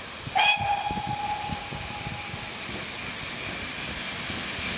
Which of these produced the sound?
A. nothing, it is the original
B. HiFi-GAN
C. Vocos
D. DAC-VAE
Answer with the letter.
A